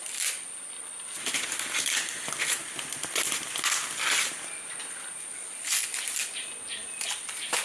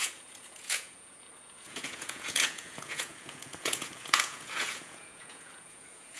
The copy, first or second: second